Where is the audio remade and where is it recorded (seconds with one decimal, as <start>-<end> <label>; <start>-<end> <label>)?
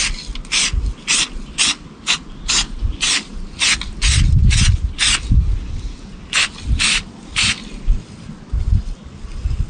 0.0-9.7 recorded